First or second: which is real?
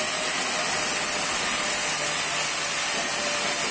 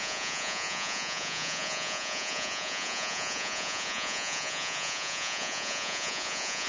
first